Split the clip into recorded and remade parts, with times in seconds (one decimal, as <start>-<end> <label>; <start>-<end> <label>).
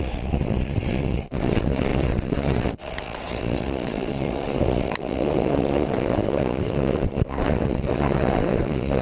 0.0-9.0 remade